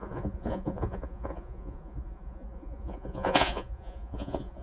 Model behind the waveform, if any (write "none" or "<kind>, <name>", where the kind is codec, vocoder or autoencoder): vocoder, Vocos